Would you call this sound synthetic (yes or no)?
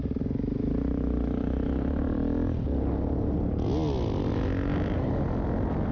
no